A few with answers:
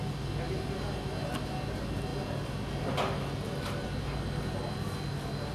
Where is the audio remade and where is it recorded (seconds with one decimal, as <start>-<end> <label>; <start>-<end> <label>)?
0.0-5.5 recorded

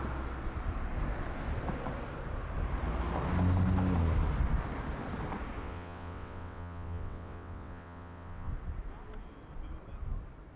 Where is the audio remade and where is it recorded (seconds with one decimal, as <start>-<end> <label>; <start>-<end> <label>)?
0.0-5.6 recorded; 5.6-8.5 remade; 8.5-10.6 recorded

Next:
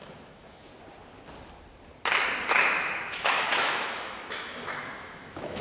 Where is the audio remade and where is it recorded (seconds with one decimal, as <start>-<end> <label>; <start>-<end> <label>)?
0.0-0.7 remade; 0.7-2.5 recorded; 2.5-5.6 remade

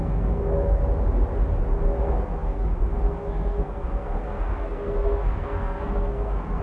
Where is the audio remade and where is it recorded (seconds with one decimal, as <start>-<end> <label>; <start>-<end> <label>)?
0.0-0.8 remade; 0.8-2.0 recorded; 2.0-6.6 remade

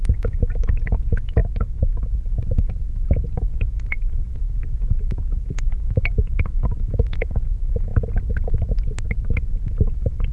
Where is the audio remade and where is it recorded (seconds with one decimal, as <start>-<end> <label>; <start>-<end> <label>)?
0.0-7.9 remade; 7.9-9.4 recorded; 9.4-10.3 remade

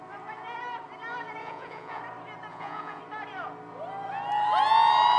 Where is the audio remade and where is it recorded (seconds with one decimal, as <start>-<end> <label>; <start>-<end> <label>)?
0.0-1.4 recorded; 1.4-2.0 remade; 2.0-2.5 recorded; 2.5-3.0 remade; 3.0-5.2 recorded

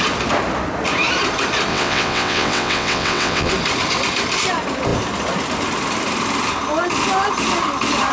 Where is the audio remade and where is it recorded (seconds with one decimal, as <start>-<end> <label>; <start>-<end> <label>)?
0.0-1.7 recorded; 1.7-3.5 remade; 3.5-8.1 recorded